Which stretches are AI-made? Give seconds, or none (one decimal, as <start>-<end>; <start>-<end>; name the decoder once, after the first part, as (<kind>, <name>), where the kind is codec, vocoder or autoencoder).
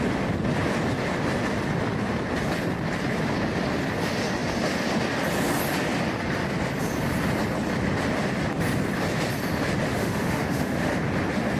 9.9-10.9 (autoencoder, DAC-VAE)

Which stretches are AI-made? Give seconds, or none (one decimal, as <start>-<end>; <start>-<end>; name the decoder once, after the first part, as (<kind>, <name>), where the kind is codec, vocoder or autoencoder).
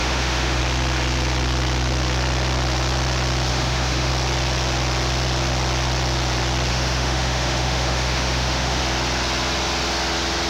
0.0-0.6 (autoencoder, DAC-VAE); 3.5-4.1; 6.7-8.8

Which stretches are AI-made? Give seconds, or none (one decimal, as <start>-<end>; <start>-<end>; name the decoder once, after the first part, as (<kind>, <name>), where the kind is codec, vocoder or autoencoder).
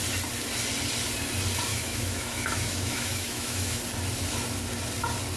1.7-3.8 (autoencoder, DAC-VAE)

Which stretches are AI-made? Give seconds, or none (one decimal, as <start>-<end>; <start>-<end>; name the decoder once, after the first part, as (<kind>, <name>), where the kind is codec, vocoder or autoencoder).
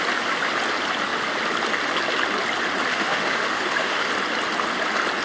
2.9-4.1 (autoencoder, DAC-VAE)